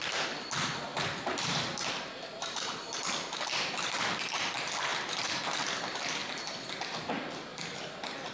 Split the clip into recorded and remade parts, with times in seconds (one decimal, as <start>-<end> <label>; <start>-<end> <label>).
0.0-0.9 recorded; 0.9-4.2 remade; 4.2-4.9 recorded; 4.9-5.8 remade; 5.8-7.5 recorded; 7.5-8.3 remade